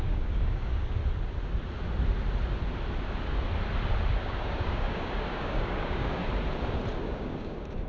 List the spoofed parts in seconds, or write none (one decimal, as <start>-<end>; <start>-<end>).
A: 0.0-1.0; 4.2-6.2; 7.0-7.9